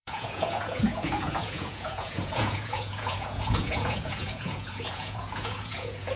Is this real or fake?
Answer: fake